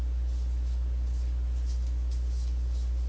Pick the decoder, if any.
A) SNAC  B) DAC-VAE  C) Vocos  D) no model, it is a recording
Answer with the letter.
D